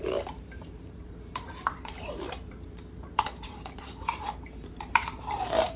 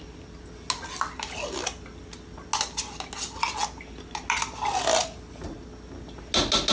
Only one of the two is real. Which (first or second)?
second